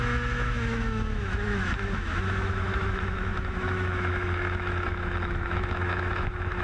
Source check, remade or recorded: remade